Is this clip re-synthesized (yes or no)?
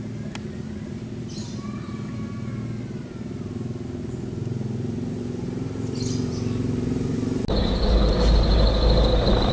no